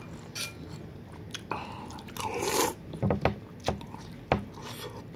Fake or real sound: real